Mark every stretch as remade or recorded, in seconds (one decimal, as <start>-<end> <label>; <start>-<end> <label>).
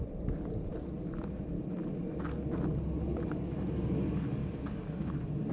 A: 0.0-4.4 recorded; 4.4-5.1 remade; 5.1-5.5 recorded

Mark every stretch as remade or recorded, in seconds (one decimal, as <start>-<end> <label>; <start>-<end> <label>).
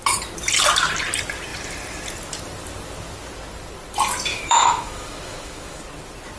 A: 0.0-4.3 recorded; 4.3-5.8 remade; 5.8-6.4 recorded